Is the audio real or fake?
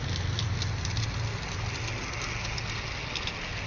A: real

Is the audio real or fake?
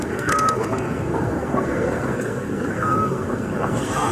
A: fake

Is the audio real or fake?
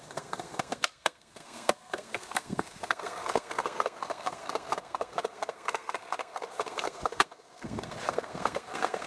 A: fake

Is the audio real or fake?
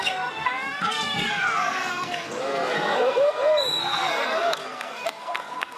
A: fake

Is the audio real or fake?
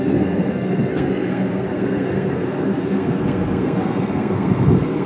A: fake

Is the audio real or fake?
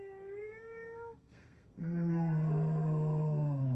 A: fake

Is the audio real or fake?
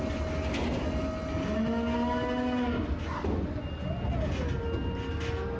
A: real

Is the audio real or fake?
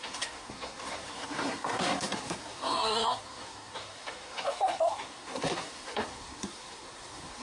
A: fake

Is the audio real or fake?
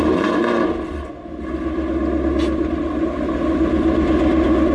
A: real